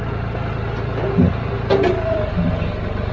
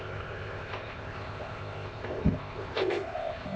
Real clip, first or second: first